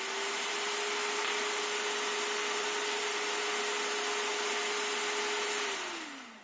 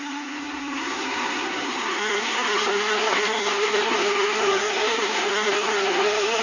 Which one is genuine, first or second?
first